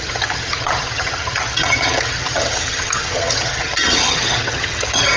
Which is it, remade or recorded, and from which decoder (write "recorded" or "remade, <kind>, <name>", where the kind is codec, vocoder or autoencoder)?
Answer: remade, vocoder, HiFi-GAN